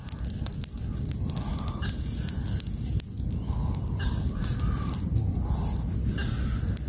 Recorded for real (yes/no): yes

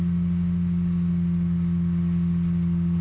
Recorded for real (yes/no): yes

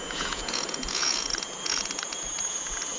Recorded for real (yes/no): no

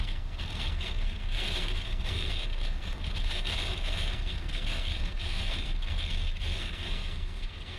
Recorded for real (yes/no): no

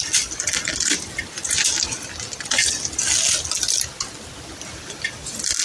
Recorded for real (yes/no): yes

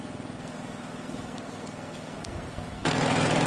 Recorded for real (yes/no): no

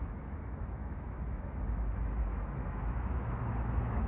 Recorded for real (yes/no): no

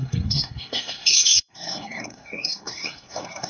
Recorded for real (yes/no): no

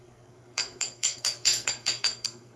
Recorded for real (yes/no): no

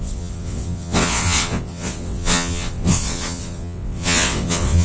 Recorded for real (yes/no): no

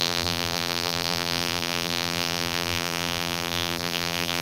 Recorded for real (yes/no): no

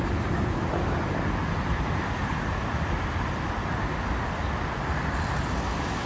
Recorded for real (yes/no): yes